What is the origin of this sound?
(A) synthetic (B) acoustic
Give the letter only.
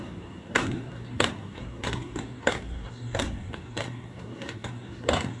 A